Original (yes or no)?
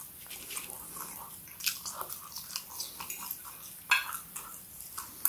yes